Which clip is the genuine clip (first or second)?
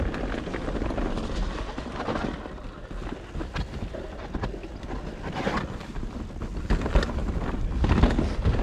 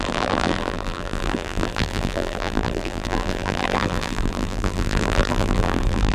first